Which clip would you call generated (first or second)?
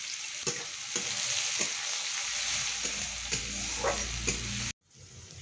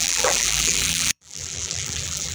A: second